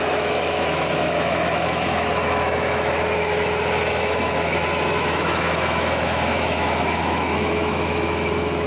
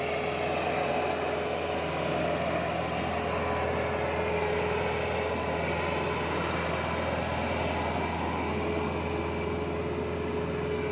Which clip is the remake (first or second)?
first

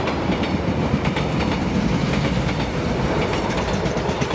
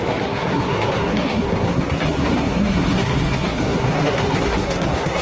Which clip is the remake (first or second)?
second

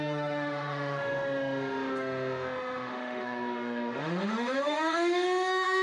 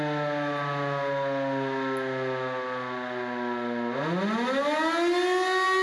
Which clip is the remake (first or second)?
first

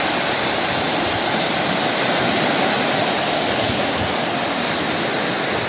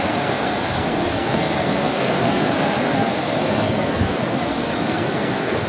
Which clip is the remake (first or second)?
second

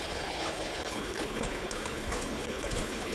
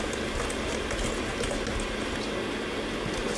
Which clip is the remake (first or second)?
first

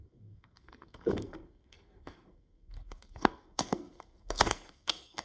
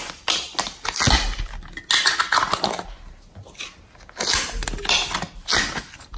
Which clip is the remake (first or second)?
first